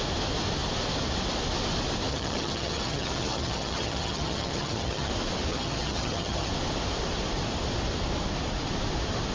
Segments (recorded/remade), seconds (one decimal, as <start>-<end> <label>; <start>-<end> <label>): 0.0-2.1 recorded; 2.1-5.1 remade; 5.1-5.5 recorded; 5.5-6.5 remade; 6.5-9.3 recorded